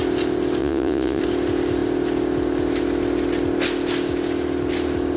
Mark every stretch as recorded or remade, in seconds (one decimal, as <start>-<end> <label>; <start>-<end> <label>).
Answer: 0.0-0.6 recorded; 0.6-1.2 remade; 1.2-5.2 recorded